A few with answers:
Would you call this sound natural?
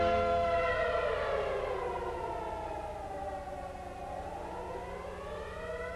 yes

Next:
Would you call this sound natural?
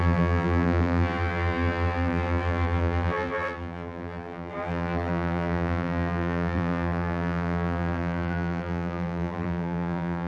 no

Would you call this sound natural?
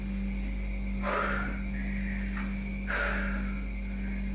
yes